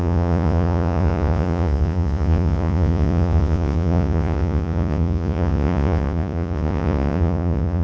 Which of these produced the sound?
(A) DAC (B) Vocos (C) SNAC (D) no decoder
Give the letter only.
B